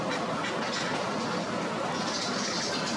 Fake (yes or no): no